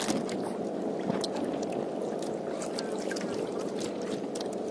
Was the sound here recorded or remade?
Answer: recorded